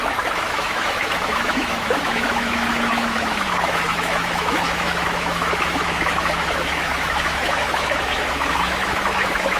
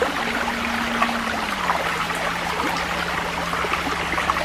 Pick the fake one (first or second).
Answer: first